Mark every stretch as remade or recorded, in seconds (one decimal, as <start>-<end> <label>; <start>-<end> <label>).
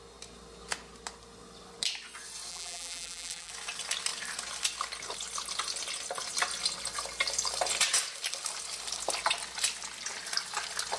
0.0-2.5 recorded; 2.5-3.5 remade; 3.5-11.0 recorded